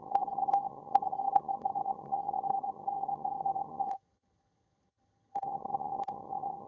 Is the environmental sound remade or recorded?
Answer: remade